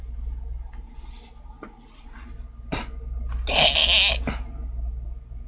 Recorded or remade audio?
recorded